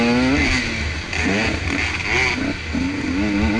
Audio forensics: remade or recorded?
recorded